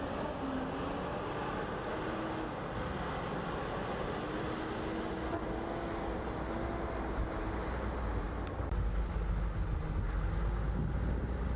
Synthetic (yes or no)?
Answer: no